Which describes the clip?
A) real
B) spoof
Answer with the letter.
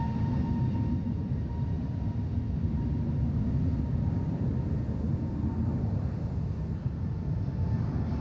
A